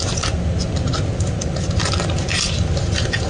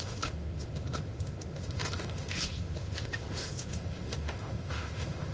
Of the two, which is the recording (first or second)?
first